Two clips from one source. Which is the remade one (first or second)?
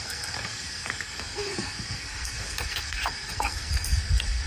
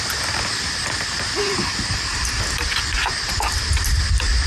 first